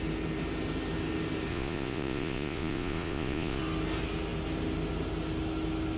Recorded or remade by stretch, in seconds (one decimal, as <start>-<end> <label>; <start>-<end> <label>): 0.0-1.5 recorded; 1.5-3.6 remade; 3.6-6.0 recorded